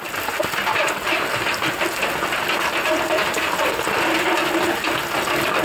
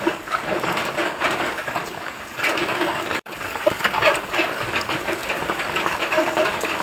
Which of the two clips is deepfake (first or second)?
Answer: second